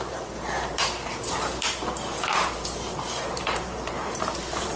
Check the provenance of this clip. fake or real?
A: fake